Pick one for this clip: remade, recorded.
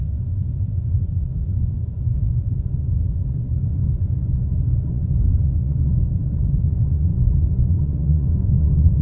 remade